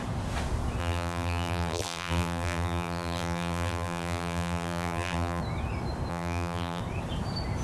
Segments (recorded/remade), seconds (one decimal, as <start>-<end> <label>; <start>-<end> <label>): 0.0-0.8 recorded; 0.8-5.4 remade; 5.4-6.1 recorded; 6.1-6.8 remade; 6.8-7.6 recorded